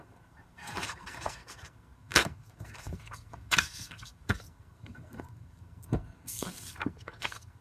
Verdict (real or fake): fake